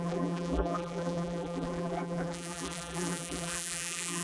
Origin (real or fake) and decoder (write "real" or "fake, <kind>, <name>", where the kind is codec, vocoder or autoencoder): fake, vocoder, BigVGAN v2